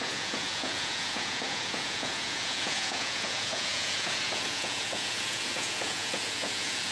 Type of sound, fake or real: fake